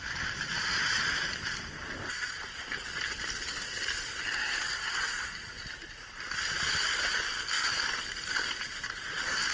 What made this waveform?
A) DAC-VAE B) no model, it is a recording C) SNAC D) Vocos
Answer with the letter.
B